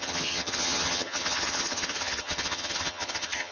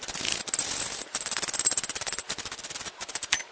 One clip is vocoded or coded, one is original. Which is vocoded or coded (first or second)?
first